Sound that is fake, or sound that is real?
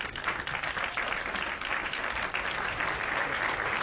real